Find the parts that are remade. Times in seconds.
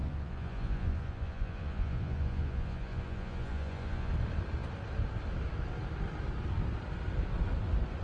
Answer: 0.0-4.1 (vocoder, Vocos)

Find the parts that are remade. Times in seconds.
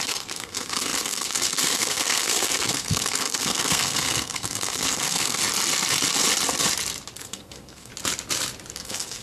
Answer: 0.0-5.4 (codec, SNAC); 7.2-7.9; 8.7-9.2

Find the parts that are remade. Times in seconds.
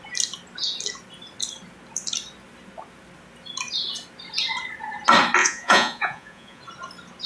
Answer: 5.4-6.6 (vocoder, Vocos)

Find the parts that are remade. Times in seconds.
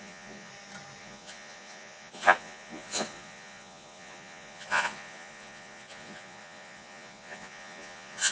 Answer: 0.0-0.5 (vocoder, Vocos); 1.0-8.3